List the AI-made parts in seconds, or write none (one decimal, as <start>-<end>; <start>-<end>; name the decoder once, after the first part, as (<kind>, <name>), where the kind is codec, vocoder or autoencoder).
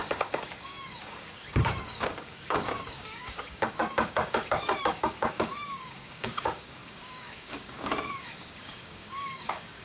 0.0-9.8 (codec, DAC)